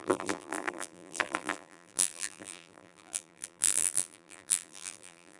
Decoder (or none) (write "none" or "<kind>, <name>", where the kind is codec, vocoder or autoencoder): vocoder, BigVGAN v2